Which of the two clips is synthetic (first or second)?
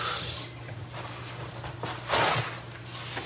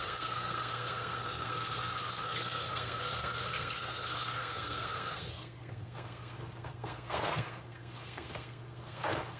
second